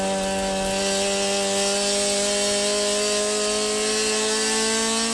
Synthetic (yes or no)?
no